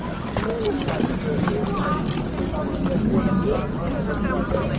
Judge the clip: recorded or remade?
recorded